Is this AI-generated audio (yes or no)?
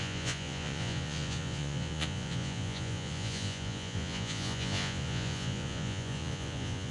yes